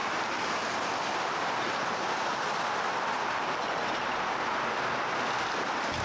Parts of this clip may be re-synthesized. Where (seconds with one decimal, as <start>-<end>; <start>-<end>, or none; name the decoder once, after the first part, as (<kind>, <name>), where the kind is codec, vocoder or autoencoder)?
none

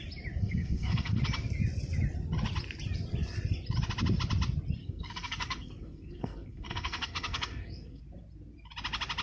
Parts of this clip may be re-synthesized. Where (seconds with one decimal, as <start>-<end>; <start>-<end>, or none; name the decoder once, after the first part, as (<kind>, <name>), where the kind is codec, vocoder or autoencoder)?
0.4-1.2 (codec, SNAC); 4.8-8.0

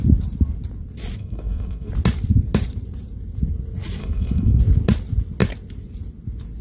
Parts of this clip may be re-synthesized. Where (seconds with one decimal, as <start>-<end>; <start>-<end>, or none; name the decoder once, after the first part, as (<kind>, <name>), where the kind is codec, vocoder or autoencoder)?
1.2-1.9 (codec, SNAC); 4.0-4.6

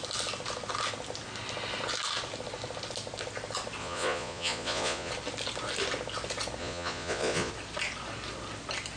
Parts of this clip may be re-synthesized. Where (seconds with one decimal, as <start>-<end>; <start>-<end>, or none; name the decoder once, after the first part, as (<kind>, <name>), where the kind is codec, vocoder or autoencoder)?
3.8-5.1 (vocoder, Vocos); 6.6-7.5

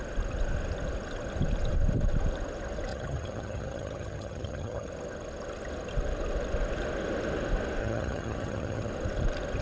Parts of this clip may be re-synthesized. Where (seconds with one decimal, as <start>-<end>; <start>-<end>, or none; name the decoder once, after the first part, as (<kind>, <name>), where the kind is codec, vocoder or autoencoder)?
2.9-4.9 (vocoder, HiFi-GAN); 7.8-8.9

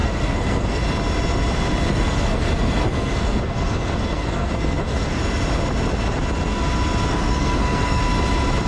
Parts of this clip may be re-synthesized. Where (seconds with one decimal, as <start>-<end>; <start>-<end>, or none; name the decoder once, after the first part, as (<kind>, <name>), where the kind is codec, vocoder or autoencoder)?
0.0-0.8 (codec, SNAC); 1.9-5.2; 7.1-8.0